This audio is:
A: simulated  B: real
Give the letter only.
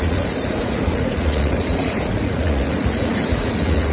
A